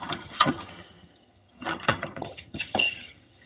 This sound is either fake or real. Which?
fake